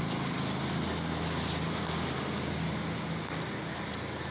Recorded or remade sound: recorded